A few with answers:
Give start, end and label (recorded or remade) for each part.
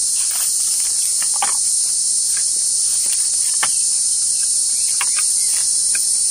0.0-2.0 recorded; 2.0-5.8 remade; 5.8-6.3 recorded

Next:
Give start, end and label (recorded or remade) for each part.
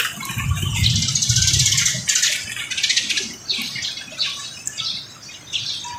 0.0-6.0 recorded